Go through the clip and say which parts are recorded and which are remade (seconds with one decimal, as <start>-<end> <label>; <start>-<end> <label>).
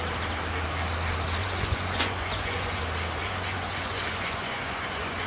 0.0-1.4 recorded; 1.4-2.8 remade; 2.8-3.2 recorded; 3.2-5.3 remade